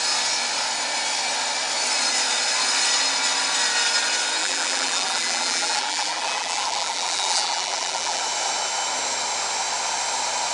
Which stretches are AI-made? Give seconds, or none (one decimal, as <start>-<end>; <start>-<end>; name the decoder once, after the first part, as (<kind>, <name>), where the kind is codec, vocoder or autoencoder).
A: 4.4-8.2 (vocoder, BigVGAN v2)